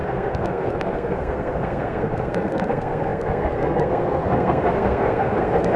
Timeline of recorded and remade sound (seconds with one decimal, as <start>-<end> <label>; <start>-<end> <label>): 0.0-5.8 remade